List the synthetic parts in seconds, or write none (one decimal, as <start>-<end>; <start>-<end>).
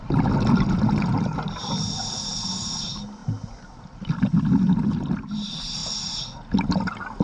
none